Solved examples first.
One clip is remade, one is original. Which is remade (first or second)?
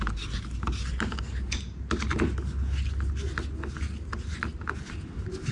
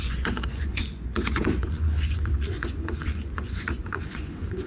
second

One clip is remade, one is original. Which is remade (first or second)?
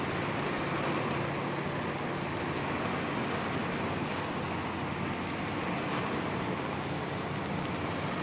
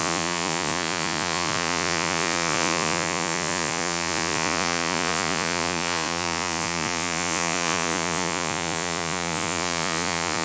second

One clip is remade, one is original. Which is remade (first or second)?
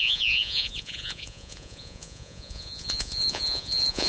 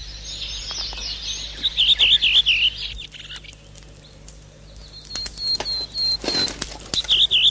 first